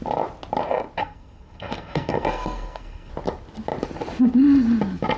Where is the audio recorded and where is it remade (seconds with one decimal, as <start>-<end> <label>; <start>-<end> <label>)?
0.0-1.0 recorded; 1.0-3.1 remade; 3.1-5.2 recorded